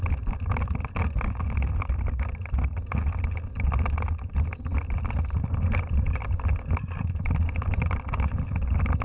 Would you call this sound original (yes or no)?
yes